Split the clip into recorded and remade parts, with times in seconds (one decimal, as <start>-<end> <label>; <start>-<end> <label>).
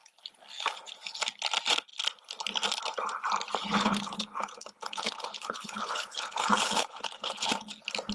0.0-3.6 recorded; 3.6-7.3 remade; 7.3-8.1 recorded